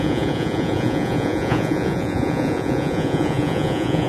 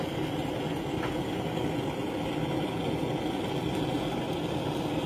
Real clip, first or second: second